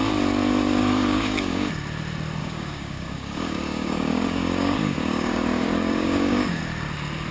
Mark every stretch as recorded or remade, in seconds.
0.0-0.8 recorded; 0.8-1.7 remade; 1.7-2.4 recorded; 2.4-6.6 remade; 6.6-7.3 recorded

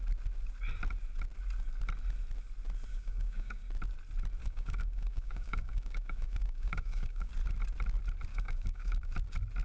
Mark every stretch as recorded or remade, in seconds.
0.0-2.9 recorded; 2.9-3.6 remade; 3.6-4.4 recorded; 4.4-7.3 remade; 7.3-8.3 recorded; 8.3-9.1 remade; 9.1-9.6 recorded

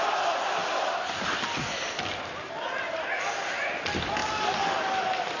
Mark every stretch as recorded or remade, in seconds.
0.0-5.4 recorded

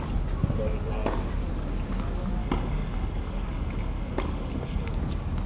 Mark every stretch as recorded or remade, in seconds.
0.0-2.4 recorded; 2.4-4.9 remade; 4.9-5.5 recorded

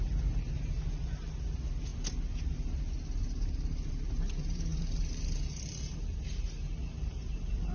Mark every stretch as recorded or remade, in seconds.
0.0-7.7 recorded

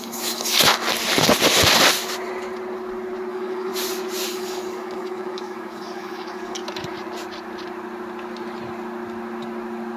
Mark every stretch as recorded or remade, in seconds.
0.0-0.7 remade; 0.7-3.3 recorded; 3.3-3.7 remade; 3.7-4.3 recorded; 4.3-6.6 remade; 6.6-10.0 recorded

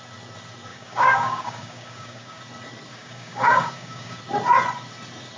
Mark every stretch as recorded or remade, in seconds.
0.0-0.7 recorded; 0.7-2.4 remade; 2.4-2.9 recorded; 2.9-4.2 remade; 4.2-5.4 recorded